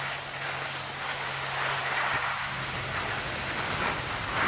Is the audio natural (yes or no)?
yes